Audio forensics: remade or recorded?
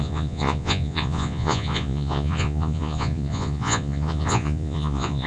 remade